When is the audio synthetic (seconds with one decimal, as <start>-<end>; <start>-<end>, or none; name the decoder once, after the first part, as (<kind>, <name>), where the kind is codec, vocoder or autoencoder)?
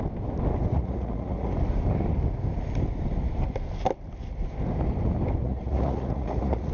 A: 0.7-1.5 (vocoder, Vocos); 5.4-6.7